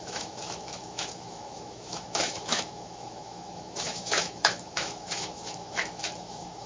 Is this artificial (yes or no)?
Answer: yes